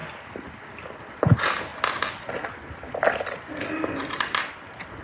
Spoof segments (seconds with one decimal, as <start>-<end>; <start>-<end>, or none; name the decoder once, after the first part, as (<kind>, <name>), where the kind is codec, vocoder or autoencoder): 1.1-1.7 (vocoder, BigVGAN v2); 4.1-5.0